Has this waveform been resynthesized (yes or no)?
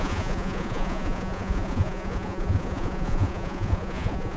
yes